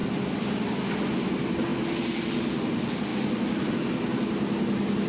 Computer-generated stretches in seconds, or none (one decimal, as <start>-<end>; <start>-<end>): none